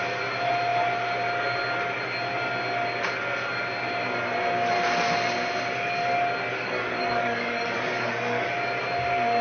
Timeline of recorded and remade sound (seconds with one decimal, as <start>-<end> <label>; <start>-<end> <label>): 0.0-6.5 recorded; 6.5-8.5 remade; 8.5-9.4 recorded